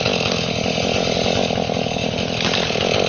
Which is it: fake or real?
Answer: real